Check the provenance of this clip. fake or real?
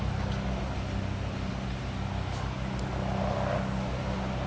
real